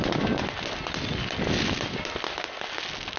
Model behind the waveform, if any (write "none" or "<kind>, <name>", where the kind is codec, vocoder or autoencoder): none